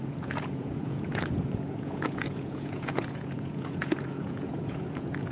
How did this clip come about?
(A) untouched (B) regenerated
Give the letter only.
B